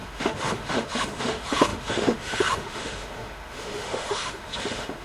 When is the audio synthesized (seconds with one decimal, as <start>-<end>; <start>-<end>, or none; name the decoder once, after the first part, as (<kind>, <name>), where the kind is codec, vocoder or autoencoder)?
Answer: 0.0-5.0 (autoencoder, DAC-VAE)